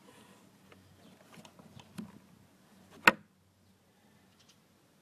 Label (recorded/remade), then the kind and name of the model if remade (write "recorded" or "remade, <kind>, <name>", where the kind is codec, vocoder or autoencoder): recorded